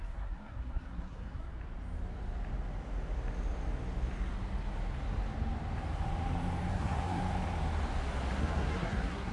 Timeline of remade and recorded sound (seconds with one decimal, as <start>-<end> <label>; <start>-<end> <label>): 0.0-1.5 remade; 1.5-6.7 recorded; 6.7-7.2 remade; 7.2-8.4 recorded; 8.4-9.3 remade